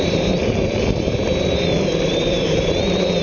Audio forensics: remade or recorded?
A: remade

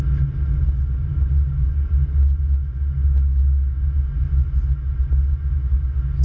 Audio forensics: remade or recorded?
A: recorded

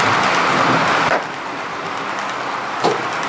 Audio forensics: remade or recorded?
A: recorded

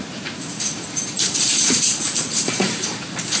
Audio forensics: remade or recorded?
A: remade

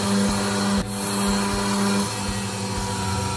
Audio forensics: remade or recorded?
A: recorded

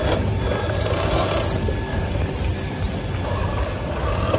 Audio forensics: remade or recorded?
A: recorded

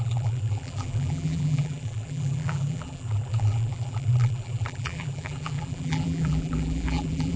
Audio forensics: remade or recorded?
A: remade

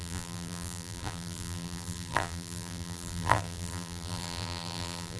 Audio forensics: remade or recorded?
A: remade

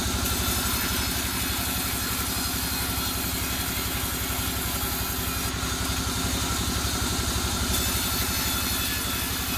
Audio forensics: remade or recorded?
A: recorded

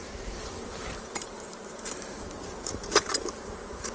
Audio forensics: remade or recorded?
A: remade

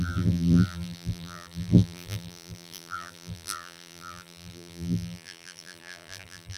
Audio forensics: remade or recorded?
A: remade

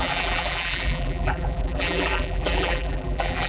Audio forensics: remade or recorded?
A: remade